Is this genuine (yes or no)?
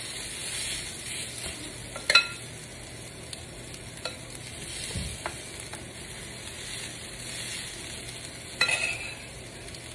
yes